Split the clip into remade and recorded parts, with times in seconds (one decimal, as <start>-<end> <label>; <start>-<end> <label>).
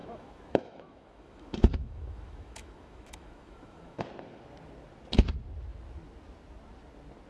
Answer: 0.0-4.0 remade; 4.0-7.3 recorded